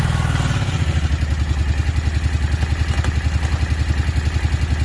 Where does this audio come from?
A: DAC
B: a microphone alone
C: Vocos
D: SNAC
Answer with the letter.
B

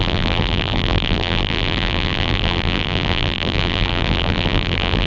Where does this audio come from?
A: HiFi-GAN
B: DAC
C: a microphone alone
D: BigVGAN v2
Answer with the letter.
D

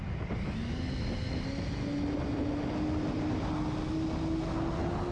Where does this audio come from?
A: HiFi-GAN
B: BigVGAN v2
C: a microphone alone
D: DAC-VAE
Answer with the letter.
C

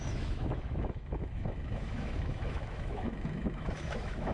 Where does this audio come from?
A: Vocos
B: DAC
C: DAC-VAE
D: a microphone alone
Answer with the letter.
C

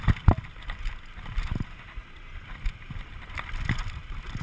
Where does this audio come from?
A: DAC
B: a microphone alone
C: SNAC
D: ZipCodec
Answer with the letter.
B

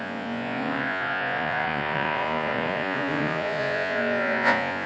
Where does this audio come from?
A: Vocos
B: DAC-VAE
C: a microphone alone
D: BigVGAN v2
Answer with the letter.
A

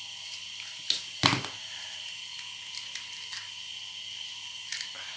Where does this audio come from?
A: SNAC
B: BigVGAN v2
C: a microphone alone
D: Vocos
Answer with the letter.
C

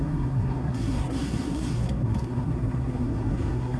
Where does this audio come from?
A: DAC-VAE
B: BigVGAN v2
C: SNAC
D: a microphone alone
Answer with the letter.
C